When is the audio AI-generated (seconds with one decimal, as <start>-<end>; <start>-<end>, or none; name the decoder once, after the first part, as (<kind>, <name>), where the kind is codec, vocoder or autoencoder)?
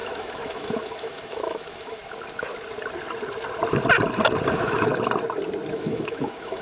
0.0-2.0 (autoencoder, DAC-VAE); 4.5-4.9; 5.7-6.6